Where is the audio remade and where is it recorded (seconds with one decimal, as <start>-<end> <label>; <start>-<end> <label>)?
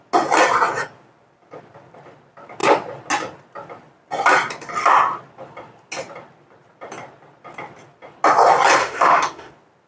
0.0-8.8 recorded; 8.8-9.5 remade; 9.5-9.9 recorded